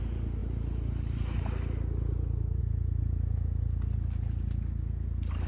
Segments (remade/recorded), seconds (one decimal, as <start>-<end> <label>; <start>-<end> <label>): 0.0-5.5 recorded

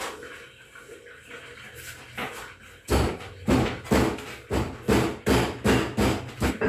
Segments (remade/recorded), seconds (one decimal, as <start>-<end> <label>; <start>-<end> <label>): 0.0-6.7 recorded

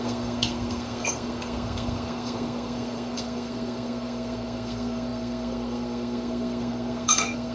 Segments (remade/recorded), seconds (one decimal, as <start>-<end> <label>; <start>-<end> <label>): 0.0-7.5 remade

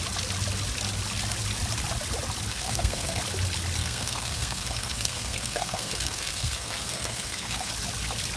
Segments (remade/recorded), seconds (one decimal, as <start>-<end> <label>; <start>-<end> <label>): 0.0-2.5 recorded; 2.5-3.2 remade; 3.2-3.8 recorded; 3.8-7.7 remade; 7.7-8.4 recorded

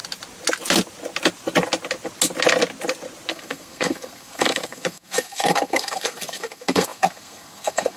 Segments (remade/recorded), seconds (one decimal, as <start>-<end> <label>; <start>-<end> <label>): 0.0-3.3 recorded; 3.3-8.0 remade